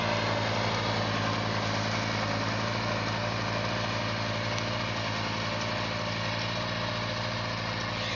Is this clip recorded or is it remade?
recorded